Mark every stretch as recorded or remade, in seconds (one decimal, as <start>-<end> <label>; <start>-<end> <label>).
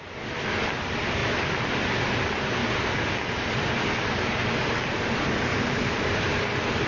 0.0-5.5 recorded; 5.5-6.1 remade; 6.1-6.9 recorded